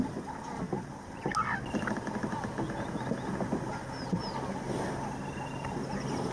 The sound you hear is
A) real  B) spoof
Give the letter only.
A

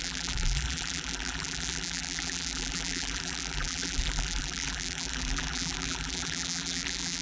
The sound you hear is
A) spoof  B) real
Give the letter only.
A